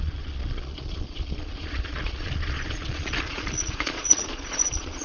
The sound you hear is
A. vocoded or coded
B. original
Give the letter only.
A